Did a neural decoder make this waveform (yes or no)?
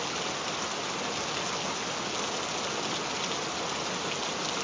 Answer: no